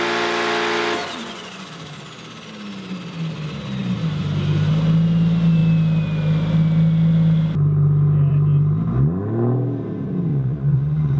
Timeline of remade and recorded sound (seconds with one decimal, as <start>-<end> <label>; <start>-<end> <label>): 0.0-1.0 recorded; 1.0-1.7 remade; 1.7-10.3 recorded; 10.3-11.2 remade